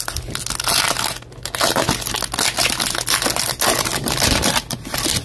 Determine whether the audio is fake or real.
real